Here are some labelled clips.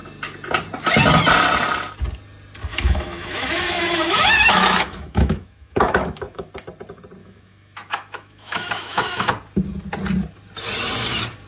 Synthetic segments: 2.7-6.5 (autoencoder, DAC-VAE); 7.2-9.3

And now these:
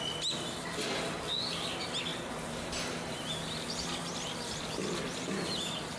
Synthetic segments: none

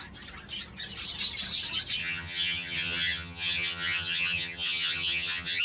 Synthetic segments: 2.0-5.6 (vocoder, HiFi-GAN)

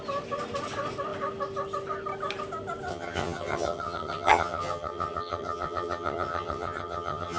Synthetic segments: 2.9-7.4 (vocoder, HiFi-GAN)